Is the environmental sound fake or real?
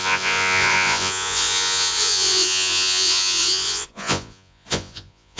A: fake